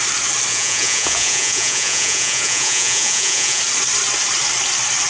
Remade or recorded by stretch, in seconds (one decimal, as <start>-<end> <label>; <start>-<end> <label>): 0.0-0.5 recorded; 0.5-3.6 remade; 3.6-5.1 recorded